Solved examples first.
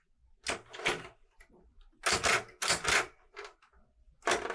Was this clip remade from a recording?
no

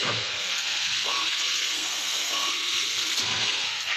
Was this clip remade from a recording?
yes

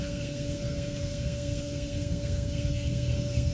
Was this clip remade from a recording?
yes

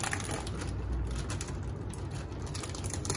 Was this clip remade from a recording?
no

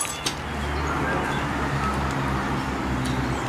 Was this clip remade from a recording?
no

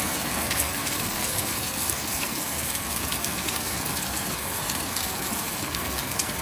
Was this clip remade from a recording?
yes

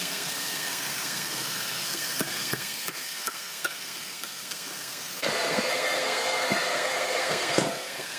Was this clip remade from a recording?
yes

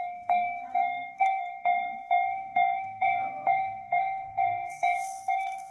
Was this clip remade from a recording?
yes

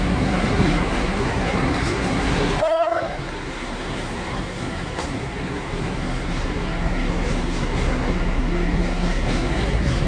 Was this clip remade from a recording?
yes